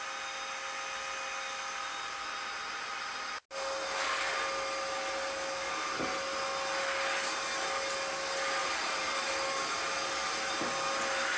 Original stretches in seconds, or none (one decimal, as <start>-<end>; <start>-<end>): 0.0-8.6; 9.3-11.4